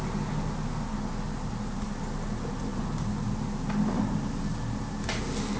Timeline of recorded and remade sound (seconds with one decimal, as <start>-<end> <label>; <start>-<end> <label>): 0.0-5.6 recorded